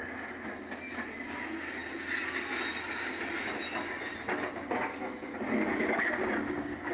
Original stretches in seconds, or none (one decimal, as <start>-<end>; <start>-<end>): 0.0-6.9